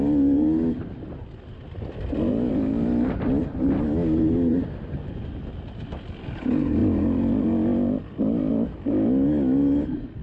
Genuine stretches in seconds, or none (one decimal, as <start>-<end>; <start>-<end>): 0.0-10.2